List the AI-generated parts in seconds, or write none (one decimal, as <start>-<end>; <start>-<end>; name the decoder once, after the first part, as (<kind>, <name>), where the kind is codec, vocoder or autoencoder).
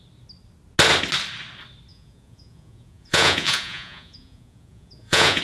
1.9-5.4 (vocoder, Vocos)